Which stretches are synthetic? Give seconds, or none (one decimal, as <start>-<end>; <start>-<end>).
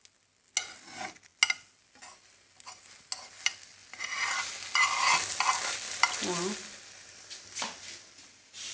none